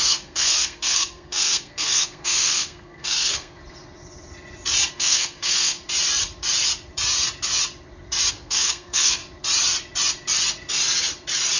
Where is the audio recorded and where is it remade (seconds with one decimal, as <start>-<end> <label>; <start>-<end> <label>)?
0.0-3.6 remade; 3.6-4.9 recorded; 4.9-5.8 remade; 5.8-8.3 recorded; 8.3-9.2 remade; 9.2-11.6 recorded